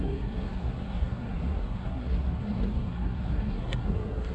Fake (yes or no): yes